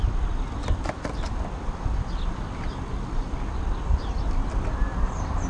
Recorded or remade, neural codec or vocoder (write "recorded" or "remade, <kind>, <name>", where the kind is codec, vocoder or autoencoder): recorded